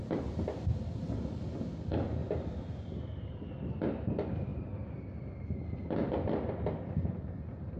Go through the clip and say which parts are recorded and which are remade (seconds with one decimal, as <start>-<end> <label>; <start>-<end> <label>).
0.0-2.2 recorded; 2.2-3.3 remade; 3.3-4.5 recorded; 4.5-5.2 remade; 5.2-7.8 recorded